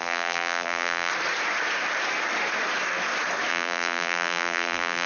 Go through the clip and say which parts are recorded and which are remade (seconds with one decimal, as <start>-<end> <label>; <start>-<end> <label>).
0.0-1.1 remade; 1.1-3.5 recorded; 3.5-5.1 remade